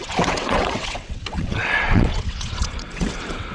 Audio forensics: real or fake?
fake